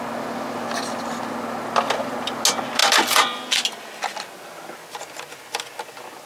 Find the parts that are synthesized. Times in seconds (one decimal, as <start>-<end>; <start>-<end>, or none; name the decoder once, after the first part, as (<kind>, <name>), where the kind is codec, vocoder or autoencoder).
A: none

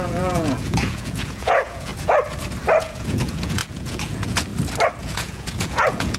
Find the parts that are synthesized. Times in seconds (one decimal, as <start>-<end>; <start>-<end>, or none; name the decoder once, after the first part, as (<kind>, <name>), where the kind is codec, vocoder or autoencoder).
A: 0.0-1.9 (vocoder, Vocos); 2.8-4.5; 5.0-6.2

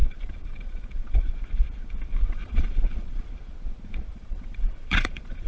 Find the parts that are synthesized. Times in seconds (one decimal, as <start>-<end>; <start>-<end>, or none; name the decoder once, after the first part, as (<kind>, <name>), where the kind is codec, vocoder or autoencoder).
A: 0.0-1.3 (vocoder, Vocos); 2.2-3.3; 4.1-5.5

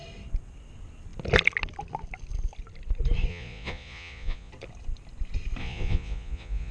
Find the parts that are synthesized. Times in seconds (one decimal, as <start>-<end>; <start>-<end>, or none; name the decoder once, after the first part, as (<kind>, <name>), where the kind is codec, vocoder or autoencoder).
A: 3.3-4.5 (vocoder, Vocos); 5.6-6.7

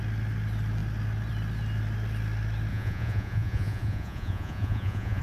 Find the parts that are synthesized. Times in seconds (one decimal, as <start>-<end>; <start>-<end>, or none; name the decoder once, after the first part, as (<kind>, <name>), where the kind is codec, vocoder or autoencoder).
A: 2.7-5.2 (vocoder, Vocos)